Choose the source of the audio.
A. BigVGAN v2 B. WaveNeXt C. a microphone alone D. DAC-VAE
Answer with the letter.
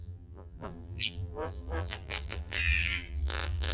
A